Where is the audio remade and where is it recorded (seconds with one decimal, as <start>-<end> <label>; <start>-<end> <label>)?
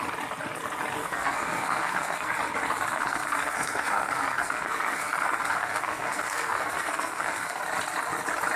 0.0-1.0 recorded; 1.0-2.3 remade; 2.3-2.9 recorded; 2.9-7.6 remade; 7.6-8.6 recorded